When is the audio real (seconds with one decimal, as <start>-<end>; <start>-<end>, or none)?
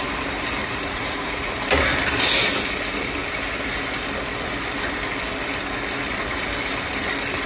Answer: 0.0-0.6; 1.5-7.5